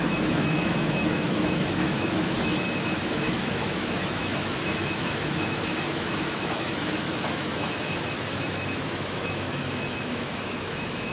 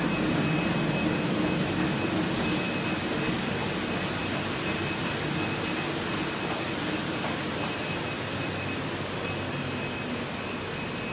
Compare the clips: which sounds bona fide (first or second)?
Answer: second